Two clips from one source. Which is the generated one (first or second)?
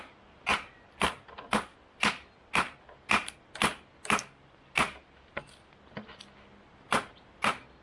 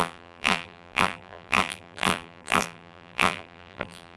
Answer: second